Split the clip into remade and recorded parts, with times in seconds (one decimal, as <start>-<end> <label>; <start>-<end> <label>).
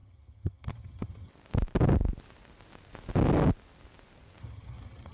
0.0-1.3 remade; 1.3-4.4 recorded; 4.4-5.1 remade